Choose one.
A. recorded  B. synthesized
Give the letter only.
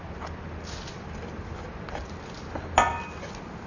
A